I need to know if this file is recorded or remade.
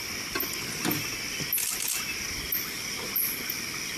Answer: recorded